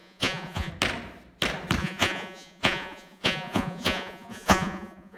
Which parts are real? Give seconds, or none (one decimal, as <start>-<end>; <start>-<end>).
0.7-1.8